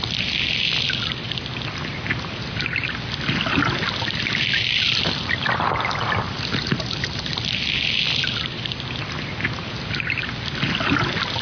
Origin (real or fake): real